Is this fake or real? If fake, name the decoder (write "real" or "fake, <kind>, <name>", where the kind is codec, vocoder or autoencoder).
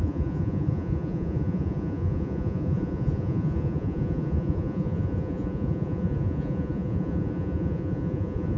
fake, vocoder, Vocos